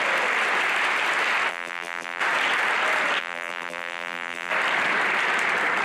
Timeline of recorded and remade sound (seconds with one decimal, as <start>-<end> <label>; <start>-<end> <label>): 0.0-1.5 recorded; 1.5-2.2 remade; 2.2-3.2 recorded; 3.2-4.5 remade; 4.5-5.8 recorded